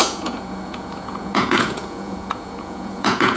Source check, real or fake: fake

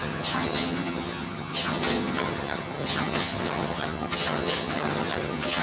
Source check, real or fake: fake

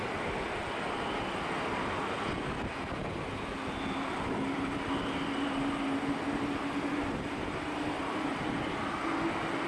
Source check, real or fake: real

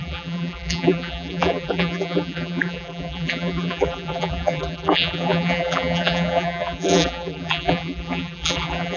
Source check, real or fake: fake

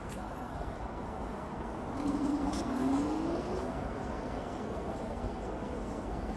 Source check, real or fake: fake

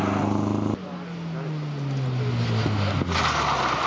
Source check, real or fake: real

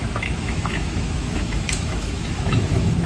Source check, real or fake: fake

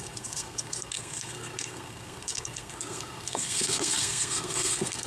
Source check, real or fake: fake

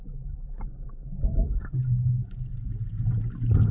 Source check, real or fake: real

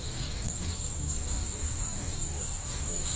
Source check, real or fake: fake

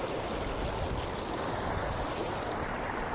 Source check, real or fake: real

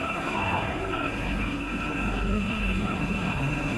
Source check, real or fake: fake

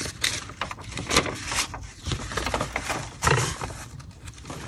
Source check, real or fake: fake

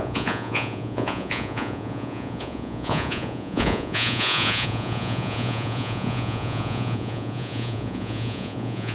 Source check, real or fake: fake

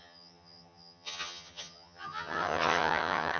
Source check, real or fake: fake